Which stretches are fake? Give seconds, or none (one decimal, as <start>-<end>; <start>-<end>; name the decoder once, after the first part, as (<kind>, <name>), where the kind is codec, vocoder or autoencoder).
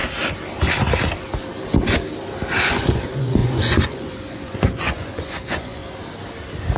2.6-5.8 (vocoder, Vocos)